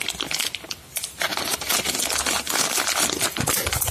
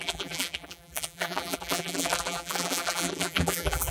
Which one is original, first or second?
first